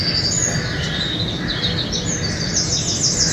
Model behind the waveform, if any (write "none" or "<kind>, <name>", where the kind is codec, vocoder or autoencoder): none